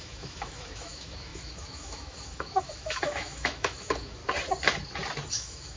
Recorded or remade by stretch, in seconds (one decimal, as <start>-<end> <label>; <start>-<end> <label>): 0.0-4.2 remade; 4.2-5.3 recorded; 5.3-5.8 remade